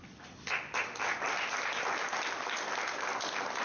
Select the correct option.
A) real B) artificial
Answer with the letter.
A